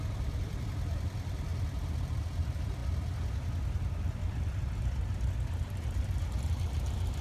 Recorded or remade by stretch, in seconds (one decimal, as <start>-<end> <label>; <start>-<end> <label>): 0.0-2.8 remade; 2.8-5.6 recorded; 5.6-7.2 remade